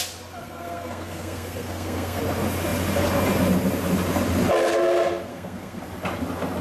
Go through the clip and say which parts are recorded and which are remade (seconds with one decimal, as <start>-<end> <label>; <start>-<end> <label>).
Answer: 0.0-0.4 recorded; 0.4-2.2 remade; 2.2-5.3 recorded; 5.3-5.8 remade; 5.8-6.6 recorded